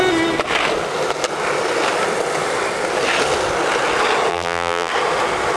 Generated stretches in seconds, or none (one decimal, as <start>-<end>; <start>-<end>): 4.3-4.9